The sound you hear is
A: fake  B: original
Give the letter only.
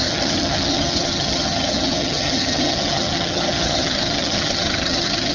A